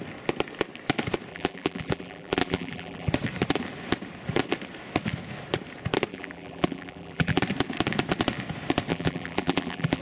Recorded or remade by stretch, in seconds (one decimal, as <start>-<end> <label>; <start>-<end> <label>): 0.0-1.3 recorded; 1.3-3.1 remade; 3.1-6.1 recorded; 6.1-7.4 remade; 7.4-8.9 recorded; 8.9-10.0 remade